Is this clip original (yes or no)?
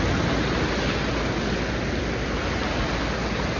yes